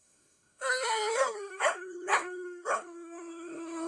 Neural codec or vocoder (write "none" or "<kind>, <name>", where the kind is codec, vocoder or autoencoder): codec, SNAC